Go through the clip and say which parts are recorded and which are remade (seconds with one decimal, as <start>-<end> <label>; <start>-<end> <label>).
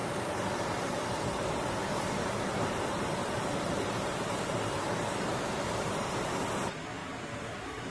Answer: 0.0-1.0 remade; 1.0-3.2 recorded; 3.2-6.3 remade; 6.3-7.0 recorded; 7.0-7.9 remade